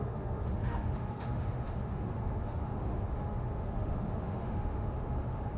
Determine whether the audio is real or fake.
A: fake